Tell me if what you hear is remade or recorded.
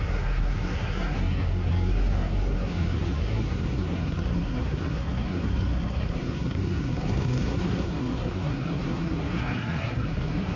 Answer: remade